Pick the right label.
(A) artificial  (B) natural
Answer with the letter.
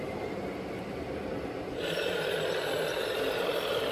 B